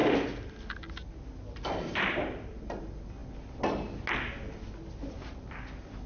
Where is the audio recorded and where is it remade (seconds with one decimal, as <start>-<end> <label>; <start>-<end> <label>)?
0.0-6.1 recorded